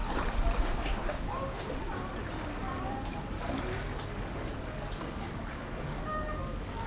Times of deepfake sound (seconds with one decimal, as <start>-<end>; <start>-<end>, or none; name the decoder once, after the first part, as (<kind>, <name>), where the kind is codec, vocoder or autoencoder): 2.6-6.9 (codec, DAC)

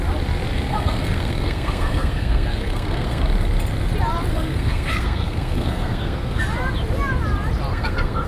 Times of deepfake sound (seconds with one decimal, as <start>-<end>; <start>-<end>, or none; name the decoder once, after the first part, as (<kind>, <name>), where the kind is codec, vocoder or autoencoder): 0.7-3.2 (codec, SNAC); 4.3-6.4; 7.7-8.3

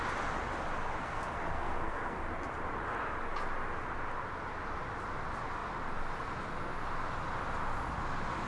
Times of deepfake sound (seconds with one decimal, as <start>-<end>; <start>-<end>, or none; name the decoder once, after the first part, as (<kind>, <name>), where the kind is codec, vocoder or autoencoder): 1.0-2.2 (codec, SNAC)

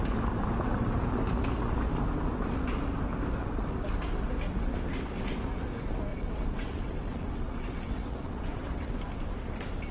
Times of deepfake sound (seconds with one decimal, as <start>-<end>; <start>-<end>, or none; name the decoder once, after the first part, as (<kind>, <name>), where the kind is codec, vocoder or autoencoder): 6.1-8.9 (vocoder, WaveNeXt)

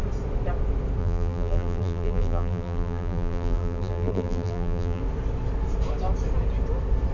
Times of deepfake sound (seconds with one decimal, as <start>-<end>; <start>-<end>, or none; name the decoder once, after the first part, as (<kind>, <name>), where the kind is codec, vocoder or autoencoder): 1.0-5.0 (vocoder, BigVGAN v2)